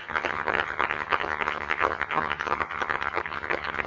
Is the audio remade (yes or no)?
yes